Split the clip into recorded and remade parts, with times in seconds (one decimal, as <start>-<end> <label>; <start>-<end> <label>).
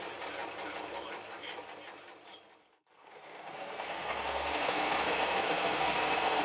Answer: 0.0-2.6 recorded; 2.6-6.4 remade